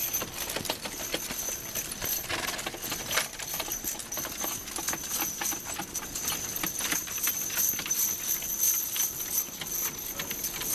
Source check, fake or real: real